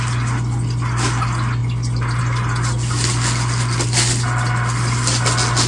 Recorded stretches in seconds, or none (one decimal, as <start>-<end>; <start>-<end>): 0.0-5.7